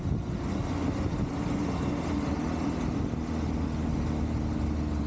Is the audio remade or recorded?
recorded